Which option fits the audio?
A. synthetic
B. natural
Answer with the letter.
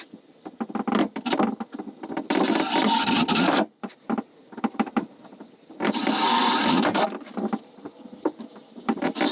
A